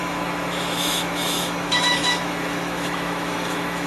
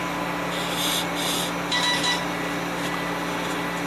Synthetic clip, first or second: first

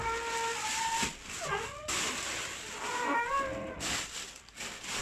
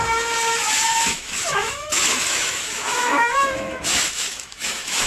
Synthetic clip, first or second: second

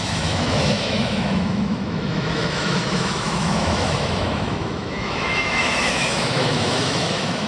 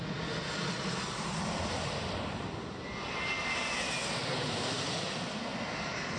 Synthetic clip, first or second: first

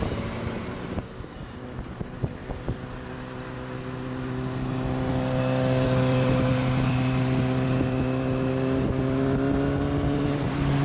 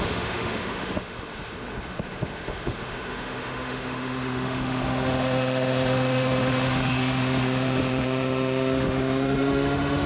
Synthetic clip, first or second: second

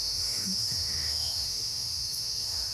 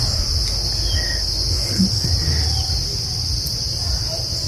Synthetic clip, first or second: first